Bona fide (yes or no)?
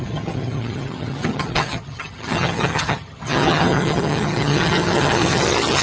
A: no